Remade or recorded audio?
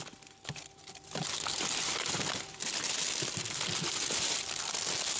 recorded